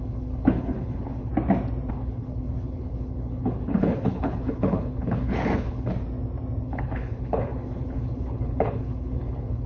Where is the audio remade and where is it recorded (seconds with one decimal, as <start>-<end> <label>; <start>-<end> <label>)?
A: 0.0-1.3 remade; 1.3-1.9 recorded; 1.9-5.9 remade; 5.9-6.6 recorded; 6.6-9.7 remade